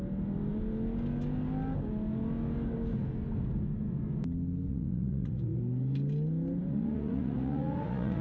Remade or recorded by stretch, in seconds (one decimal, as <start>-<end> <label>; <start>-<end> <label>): 0.0-4.7 recorded; 4.7-5.6 remade; 5.6-6.7 recorded; 6.7-8.2 remade